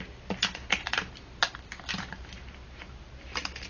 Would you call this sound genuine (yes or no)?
yes